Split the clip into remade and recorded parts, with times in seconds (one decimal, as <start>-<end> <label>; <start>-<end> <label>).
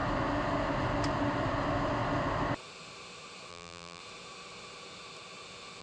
0.0-3.5 recorded; 3.5-4.0 remade; 4.0-5.8 recorded